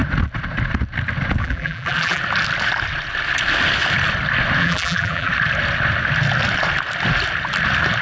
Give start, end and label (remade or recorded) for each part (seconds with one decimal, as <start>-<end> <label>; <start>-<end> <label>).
0.0-1.4 recorded; 1.4-2.2 remade; 2.2-4.6 recorded; 4.6-5.3 remade; 5.3-8.0 recorded